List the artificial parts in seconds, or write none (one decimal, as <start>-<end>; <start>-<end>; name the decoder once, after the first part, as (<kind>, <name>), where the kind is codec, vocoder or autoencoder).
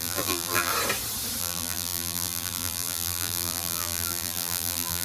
0.0-0.7 (vocoder, BigVGAN v2); 1.4-5.0